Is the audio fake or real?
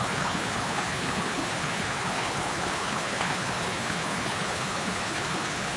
fake